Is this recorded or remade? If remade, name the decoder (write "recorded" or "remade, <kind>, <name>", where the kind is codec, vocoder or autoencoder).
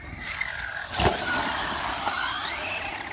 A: recorded